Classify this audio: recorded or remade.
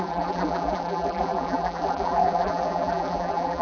remade